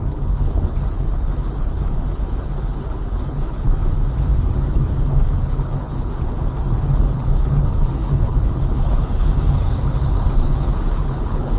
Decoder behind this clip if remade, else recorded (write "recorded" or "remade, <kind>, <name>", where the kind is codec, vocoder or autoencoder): remade, codec, HILCodec